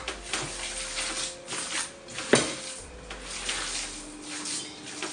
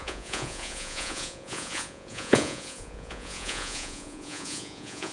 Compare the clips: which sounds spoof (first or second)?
second